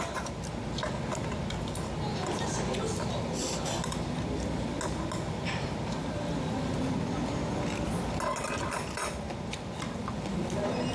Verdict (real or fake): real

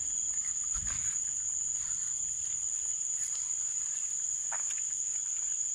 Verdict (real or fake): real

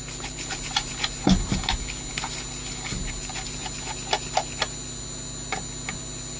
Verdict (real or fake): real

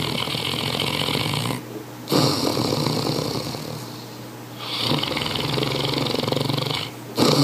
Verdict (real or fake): real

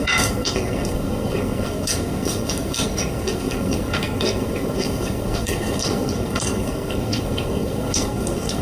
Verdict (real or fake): fake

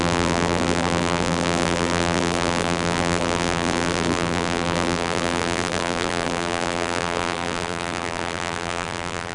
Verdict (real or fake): fake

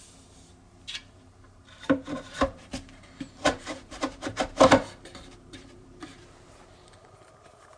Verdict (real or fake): fake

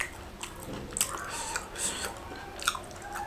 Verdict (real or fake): real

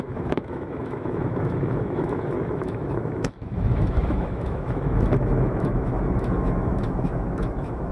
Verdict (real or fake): fake